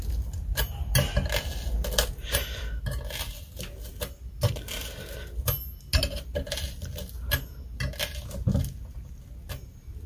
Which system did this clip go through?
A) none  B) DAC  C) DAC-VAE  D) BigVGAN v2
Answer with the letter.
A